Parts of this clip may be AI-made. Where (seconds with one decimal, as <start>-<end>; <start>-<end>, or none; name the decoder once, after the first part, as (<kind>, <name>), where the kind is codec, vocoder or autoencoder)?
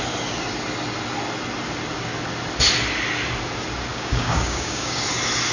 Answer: 3.9-5.0 (codec, DAC)